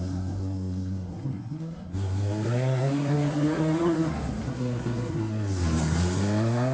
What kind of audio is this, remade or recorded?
remade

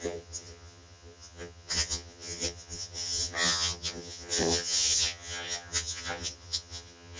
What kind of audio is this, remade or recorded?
remade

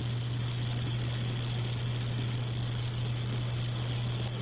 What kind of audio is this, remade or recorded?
recorded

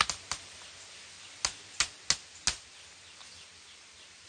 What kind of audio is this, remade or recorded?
recorded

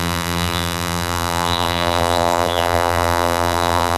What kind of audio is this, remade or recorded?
remade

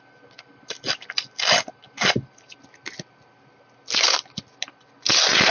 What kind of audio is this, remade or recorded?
recorded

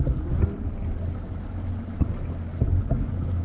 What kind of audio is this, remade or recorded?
recorded